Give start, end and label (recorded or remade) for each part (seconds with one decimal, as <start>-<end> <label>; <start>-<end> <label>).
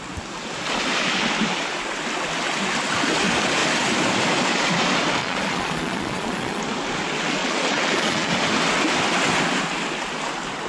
0.0-5.2 recorded; 5.2-6.6 remade; 6.6-7.4 recorded; 7.4-8.3 remade; 8.3-10.7 recorded